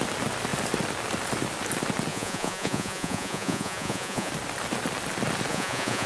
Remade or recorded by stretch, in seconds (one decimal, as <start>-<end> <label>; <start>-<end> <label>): 0.0-2.1 recorded; 2.1-4.3 remade; 4.3-5.5 recorded; 5.5-6.1 remade